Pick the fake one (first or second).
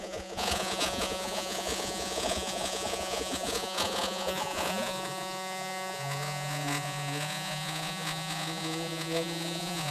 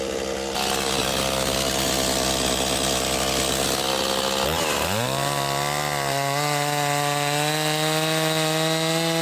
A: first